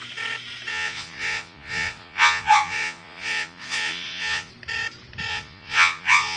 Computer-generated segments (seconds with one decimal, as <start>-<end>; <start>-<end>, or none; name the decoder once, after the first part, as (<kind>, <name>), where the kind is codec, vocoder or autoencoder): 0.7-4.5 (vocoder, Vocos); 5.3-6.4